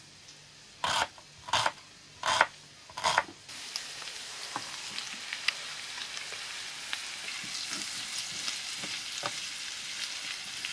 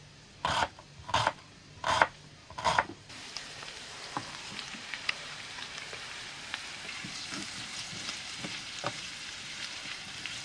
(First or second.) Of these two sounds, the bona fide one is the first